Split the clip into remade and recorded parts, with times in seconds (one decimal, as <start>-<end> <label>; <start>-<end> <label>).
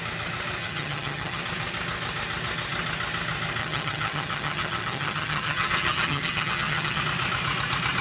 0.0-0.6 recorded; 0.6-1.4 remade; 1.4-3.6 recorded; 3.6-7.0 remade; 7.0-8.0 recorded